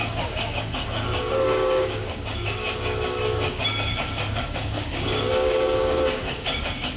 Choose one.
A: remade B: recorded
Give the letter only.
A